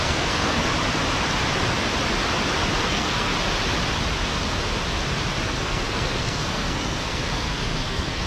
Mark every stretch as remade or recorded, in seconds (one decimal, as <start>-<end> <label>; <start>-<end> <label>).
0.0-0.7 remade; 0.7-2.8 recorded; 2.8-3.3 remade; 3.3-5.4 recorded; 5.4-8.3 remade